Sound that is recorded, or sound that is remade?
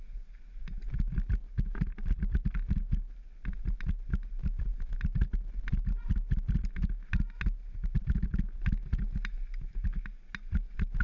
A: recorded